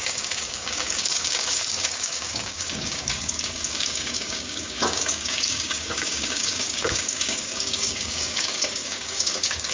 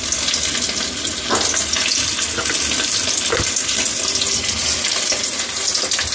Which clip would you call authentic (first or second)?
second